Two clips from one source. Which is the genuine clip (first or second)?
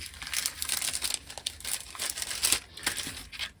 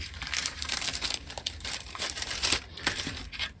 first